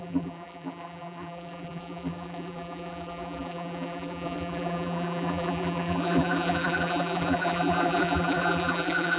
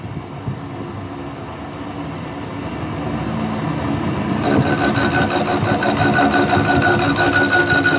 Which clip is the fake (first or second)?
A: first